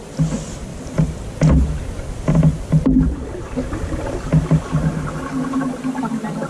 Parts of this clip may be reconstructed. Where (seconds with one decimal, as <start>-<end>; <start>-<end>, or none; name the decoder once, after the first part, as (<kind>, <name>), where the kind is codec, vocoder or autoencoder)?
none